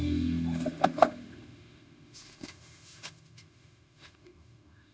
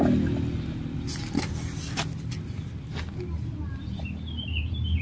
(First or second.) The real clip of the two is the second